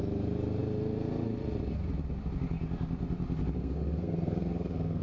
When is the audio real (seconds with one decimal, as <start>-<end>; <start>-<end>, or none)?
0.0-3.6

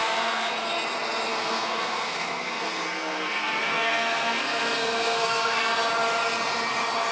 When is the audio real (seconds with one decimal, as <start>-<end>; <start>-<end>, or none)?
0.5-1.3; 5.6-7.1